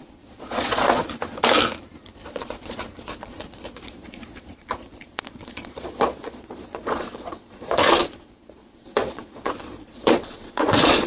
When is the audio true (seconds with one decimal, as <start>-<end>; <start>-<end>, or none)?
1.0-2.0